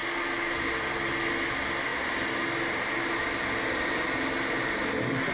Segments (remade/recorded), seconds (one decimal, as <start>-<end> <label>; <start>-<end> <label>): 0.0-5.3 recorded